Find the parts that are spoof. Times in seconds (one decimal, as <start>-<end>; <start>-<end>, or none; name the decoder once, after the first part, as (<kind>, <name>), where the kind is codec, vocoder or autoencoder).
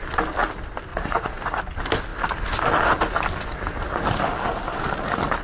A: 0.9-1.6 (vocoder, Vocos)